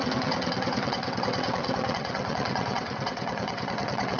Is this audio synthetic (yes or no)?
yes